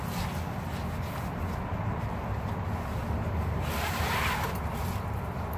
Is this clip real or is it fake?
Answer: real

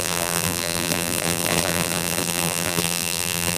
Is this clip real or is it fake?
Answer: fake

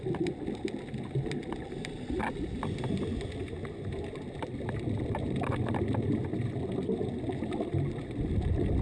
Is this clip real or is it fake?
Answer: real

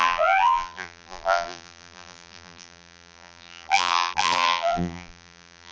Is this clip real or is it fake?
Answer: fake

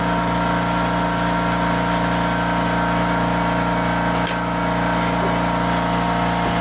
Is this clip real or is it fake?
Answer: real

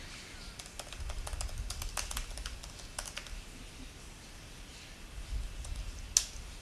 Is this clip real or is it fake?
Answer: real